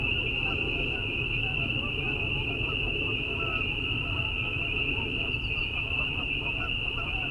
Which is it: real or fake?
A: real